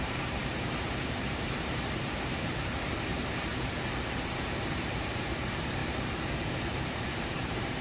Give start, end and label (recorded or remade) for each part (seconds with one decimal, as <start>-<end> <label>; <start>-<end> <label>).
0.0-3.5 remade; 3.5-4.1 recorded; 4.1-5.8 remade; 5.8-6.6 recorded; 6.6-7.8 remade